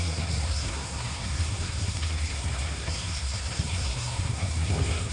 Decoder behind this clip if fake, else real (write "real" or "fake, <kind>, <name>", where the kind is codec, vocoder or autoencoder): fake, codec, SNAC